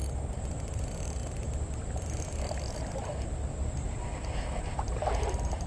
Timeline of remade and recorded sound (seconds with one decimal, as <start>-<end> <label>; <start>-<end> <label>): 0.0-5.7 recorded